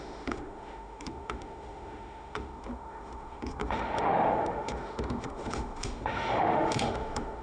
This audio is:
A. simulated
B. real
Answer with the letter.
A